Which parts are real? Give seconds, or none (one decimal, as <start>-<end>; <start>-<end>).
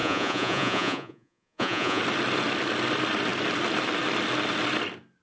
2.0-5.2